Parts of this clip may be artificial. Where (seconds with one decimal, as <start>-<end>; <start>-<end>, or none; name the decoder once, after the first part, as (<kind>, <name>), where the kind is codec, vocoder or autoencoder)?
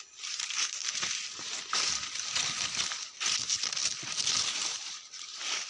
none